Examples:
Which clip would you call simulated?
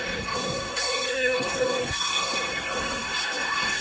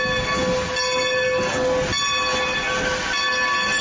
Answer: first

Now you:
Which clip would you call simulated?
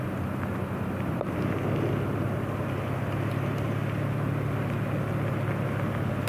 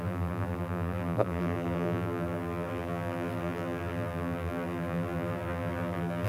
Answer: second